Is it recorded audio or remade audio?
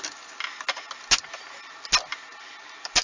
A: recorded